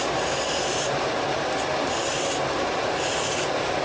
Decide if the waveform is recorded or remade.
recorded